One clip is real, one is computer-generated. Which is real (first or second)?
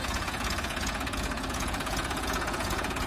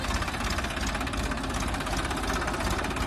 second